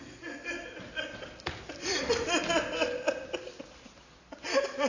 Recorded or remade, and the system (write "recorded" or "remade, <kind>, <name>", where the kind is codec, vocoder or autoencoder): recorded